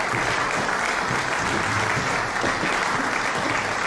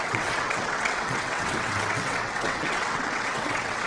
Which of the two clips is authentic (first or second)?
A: first